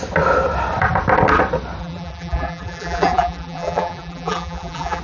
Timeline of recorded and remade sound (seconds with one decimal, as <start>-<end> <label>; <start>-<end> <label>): 0.0-1.8 recorded; 1.8-5.0 remade